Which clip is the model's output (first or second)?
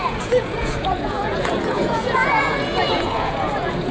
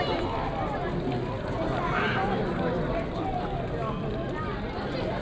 first